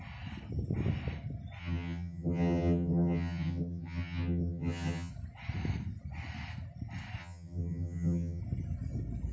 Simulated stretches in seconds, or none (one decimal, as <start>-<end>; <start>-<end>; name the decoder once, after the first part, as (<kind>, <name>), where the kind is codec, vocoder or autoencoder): 1.6-5.1 (vocoder, HiFi-GAN); 7.2-8.4